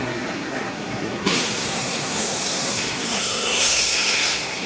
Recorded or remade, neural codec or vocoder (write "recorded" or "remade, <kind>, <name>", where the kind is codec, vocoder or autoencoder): remade, codec, SNAC